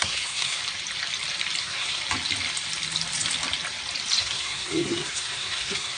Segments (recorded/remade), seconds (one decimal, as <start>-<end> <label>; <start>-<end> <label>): 0.0-0.6 remade; 0.6-1.6 recorded; 1.6-2.0 remade; 2.0-4.2 recorded; 4.2-6.0 remade